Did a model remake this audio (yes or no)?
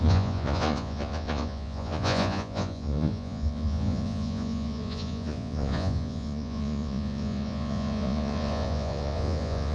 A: yes